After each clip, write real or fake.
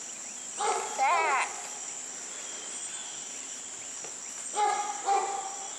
real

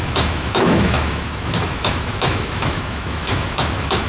fake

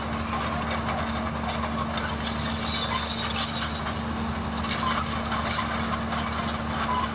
real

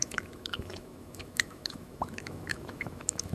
fake